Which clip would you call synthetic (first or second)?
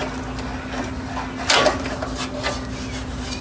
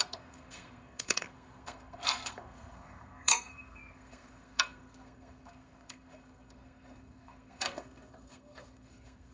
second